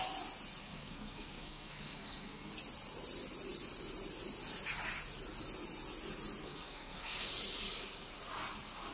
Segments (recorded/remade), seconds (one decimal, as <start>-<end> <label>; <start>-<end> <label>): 0.0-0.6 recorded; 0.6-2.5 remade; 2.5-6.4 recorded; 6.4-7.3 remade; 7.3-8.9 recorded